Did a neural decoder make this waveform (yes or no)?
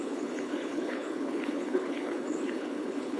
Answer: yes